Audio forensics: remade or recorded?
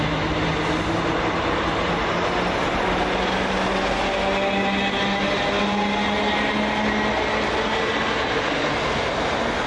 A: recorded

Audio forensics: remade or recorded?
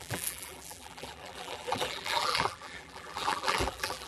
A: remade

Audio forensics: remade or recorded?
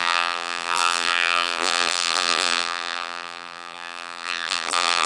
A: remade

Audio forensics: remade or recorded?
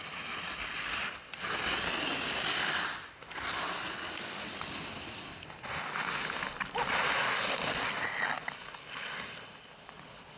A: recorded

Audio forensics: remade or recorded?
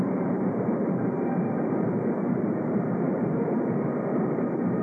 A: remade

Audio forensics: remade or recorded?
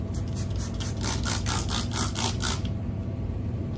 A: recorded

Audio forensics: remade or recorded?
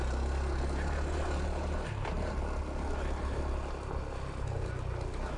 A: recorded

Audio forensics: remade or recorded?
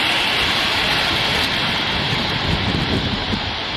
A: remade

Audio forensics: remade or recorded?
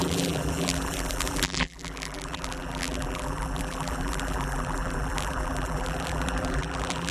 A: remade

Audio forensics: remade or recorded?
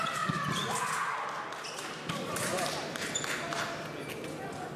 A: recorded